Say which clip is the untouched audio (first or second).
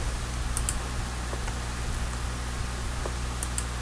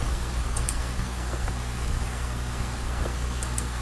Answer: first